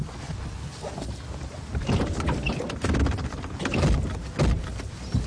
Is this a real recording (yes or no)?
no